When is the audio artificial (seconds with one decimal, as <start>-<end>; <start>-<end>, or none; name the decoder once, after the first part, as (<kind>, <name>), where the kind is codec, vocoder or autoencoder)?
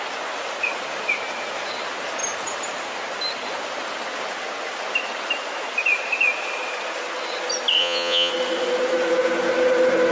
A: 7.8-8.3 (vocoder, Vocos)